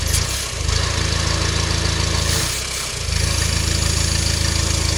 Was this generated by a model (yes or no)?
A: no